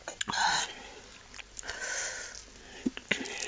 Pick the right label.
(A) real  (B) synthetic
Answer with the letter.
A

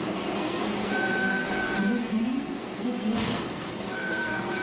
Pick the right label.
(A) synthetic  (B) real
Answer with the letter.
A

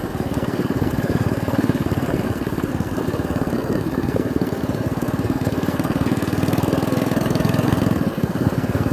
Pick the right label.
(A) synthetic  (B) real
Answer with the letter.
A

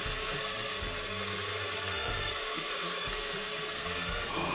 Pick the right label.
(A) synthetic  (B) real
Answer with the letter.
A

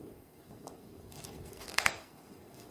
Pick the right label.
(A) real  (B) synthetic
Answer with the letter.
B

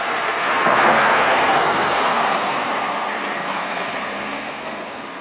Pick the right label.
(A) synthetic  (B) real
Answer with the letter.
A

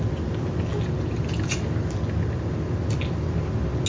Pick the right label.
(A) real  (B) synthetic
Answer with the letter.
A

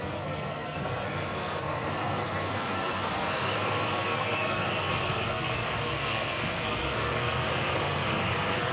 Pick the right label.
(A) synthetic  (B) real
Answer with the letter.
A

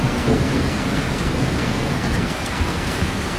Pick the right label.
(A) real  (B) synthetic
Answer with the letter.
B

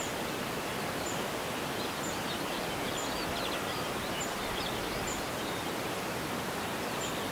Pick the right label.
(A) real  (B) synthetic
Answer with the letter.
A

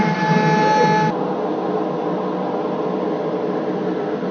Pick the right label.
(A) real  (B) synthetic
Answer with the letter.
A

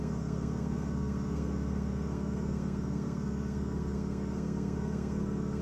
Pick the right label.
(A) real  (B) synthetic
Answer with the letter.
B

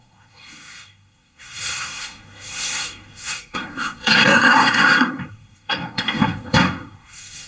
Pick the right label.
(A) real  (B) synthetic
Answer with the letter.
B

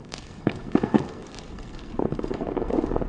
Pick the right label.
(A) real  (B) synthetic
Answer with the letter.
B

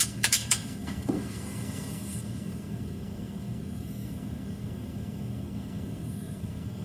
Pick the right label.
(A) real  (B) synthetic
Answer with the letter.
B